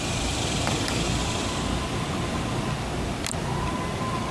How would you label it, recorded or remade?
remade